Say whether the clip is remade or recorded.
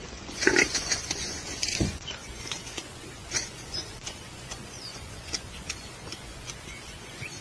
remade